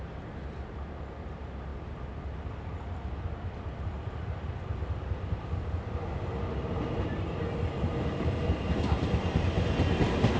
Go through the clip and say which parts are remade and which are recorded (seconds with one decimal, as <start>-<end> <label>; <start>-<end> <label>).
0.0-10.4 recorded